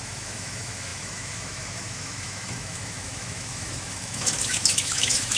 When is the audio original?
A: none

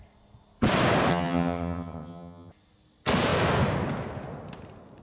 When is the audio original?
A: 0.0-1.1; 2.5-5.0

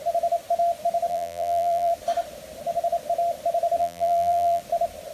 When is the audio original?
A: 0.0-1.1; 1.9-3.8; 4.6-5.1

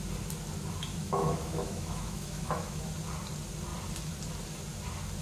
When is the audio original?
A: 0.0-0.9; 2.8-5.2

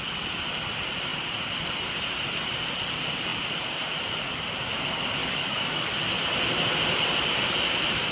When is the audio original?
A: 0.0-5.2; 5.9-8.1

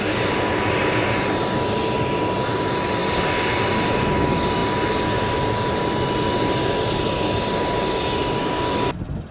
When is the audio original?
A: 0.0-9.3

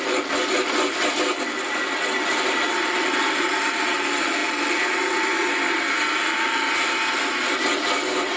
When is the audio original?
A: 0.0-4.4; 5.5-8.4

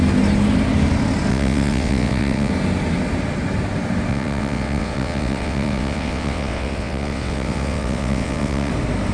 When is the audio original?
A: 0.0-1.3; 2.5-4.1; 8.7-9.1